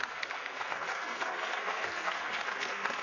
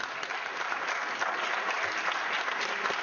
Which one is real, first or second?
second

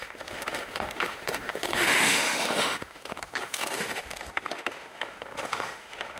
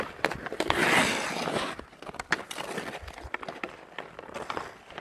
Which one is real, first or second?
second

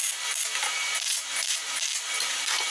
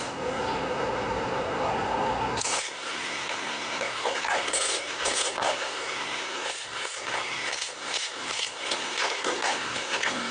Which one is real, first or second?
first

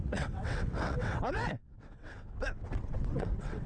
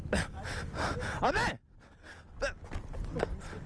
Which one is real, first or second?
second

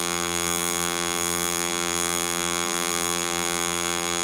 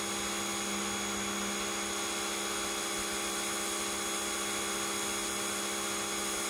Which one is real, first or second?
second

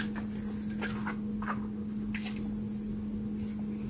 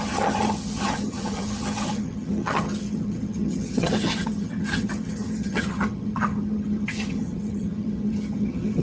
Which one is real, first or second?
first